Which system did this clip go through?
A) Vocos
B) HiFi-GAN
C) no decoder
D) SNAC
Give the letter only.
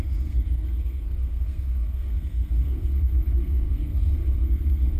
D